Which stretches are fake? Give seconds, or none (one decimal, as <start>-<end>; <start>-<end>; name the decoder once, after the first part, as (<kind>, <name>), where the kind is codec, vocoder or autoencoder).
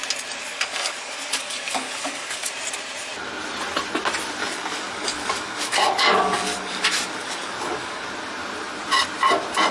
0.4-2.5 (codec, DAC); 4.4-8.1